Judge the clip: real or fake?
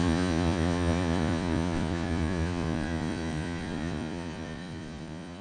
fake